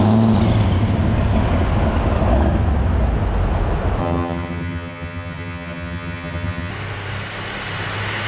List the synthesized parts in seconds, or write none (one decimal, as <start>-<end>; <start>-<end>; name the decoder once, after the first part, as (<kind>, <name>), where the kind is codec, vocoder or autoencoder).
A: 4.0-6.7 (vocoder, HiFi-GAN)